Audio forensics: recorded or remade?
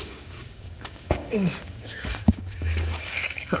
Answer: remade